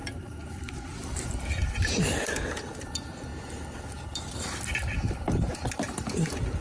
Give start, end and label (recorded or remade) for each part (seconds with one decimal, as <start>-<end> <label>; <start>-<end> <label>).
0.0-6.6 remade